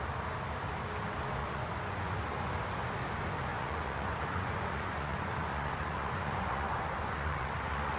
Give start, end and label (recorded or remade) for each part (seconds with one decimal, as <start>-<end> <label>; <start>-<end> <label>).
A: 0.0-1.4 recorded; 1.4-2.5 remade; 2.5-3.5 recorded; 3.5-8.0 remade